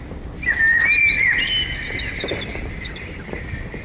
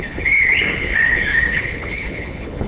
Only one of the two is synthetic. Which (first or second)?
second